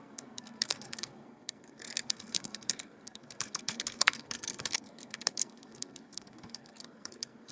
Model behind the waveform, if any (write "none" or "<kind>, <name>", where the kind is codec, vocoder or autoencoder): codec, SNAC